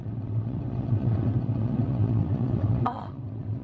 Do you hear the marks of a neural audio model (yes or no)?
yes